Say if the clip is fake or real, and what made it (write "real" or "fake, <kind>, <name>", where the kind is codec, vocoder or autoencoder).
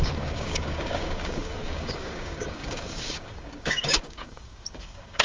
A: fake, codec, DAC